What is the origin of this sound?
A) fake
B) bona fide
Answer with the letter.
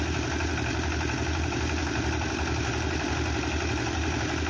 B